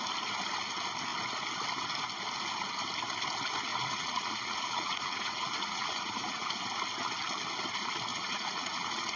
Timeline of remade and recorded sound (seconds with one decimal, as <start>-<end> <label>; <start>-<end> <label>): 0.0-3.7 recorded; 3.7-6.5 remade; 6.5-8.1 recorded; 8.1-9.2 remade